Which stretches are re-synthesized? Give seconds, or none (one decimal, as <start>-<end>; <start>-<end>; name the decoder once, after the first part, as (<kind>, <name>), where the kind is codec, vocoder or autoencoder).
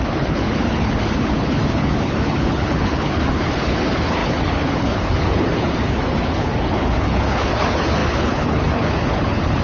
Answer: 0.0-9.6 (codec, HILCodec)